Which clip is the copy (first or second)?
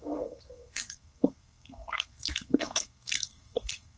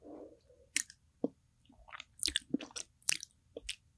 first